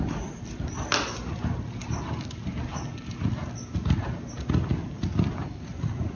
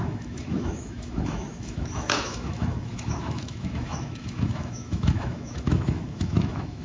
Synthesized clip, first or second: second